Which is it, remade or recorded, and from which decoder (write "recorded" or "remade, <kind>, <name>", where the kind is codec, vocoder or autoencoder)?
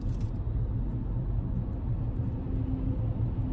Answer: recorded